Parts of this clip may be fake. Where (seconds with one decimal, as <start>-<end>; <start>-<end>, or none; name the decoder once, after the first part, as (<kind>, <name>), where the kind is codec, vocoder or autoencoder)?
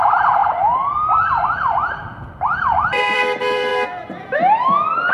0.0-3.7 (vocoder, BigVGAN v2)